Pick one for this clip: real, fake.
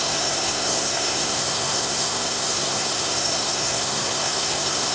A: fake